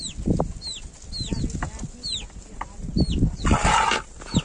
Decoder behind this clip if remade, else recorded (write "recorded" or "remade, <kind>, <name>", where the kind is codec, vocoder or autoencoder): recorded